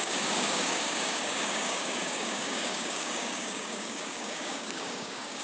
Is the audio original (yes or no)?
no